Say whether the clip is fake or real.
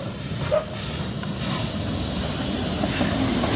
real